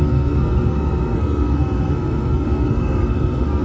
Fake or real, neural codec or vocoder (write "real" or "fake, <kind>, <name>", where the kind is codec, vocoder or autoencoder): fake, codec, SNAC